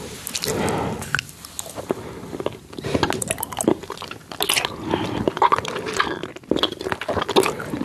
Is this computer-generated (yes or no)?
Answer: no